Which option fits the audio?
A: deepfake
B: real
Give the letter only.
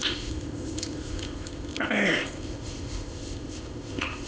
A